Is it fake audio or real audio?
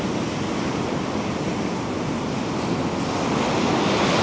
real